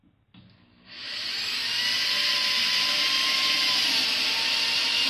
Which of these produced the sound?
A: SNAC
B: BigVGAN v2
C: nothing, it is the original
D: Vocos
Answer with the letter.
C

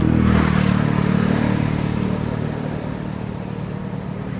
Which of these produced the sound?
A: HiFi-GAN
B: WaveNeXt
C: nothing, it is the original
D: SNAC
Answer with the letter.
C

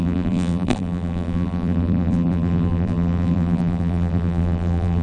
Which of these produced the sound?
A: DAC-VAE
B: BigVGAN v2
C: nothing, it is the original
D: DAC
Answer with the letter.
B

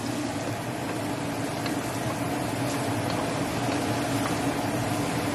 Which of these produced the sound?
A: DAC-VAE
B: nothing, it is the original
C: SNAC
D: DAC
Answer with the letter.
B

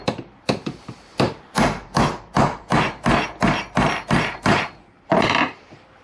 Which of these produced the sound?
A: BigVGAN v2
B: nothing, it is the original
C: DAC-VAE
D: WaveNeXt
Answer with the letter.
A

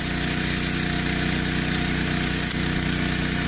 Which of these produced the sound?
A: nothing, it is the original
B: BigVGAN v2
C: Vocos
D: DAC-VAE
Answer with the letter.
A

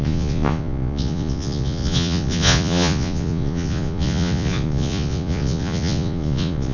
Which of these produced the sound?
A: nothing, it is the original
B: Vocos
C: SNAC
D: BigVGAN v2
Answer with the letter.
B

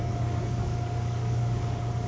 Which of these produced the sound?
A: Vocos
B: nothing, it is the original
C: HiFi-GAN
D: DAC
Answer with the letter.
D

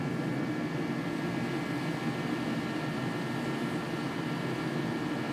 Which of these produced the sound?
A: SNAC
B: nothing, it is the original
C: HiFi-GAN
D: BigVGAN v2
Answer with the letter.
B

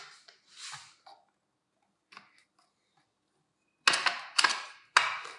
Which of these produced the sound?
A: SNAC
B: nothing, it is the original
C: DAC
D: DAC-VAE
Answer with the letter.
B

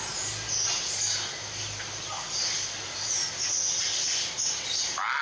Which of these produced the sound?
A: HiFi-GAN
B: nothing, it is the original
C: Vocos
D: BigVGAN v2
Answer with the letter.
B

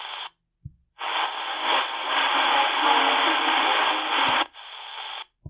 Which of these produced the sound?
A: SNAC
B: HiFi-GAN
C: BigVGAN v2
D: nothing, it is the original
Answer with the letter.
D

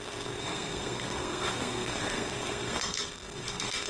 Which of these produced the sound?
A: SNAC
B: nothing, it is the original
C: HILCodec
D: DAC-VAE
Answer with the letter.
A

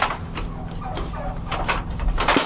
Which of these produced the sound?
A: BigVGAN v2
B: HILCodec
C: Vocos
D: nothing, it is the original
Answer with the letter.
D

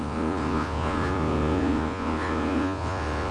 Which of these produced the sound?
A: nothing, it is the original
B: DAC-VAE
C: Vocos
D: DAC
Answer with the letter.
C